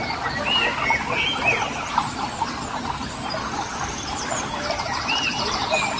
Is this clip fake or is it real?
real